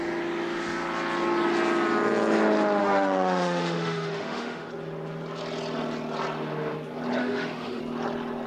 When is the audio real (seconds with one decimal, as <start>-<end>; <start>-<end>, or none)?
0.0-2.8; 4.7-7.2; 7.8-8.5

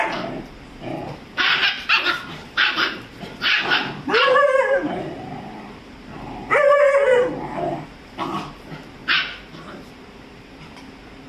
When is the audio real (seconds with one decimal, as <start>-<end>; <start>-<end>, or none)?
9.0-9.9

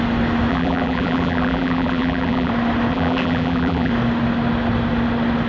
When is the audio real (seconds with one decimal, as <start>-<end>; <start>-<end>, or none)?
0.0-0.5; 2.5-2.9; 3.9-5.5

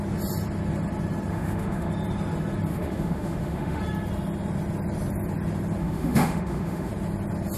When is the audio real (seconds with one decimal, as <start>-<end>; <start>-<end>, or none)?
0.0-1.3; 1.9-2.7; 3.8-5.8; 6.9-7.6

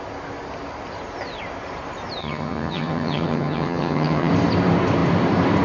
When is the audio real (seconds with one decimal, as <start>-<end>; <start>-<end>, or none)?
0.0-2.2; 4.3-5.6

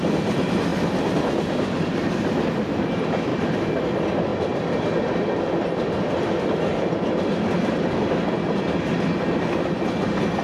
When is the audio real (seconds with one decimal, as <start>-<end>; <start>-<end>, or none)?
0.0-0.7; 2.2-4.3; 8.6-10.4

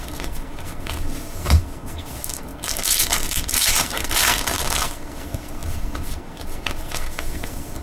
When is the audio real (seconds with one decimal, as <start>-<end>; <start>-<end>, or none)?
none